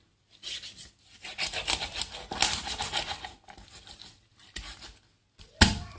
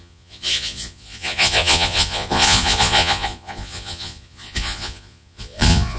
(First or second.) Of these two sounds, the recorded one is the first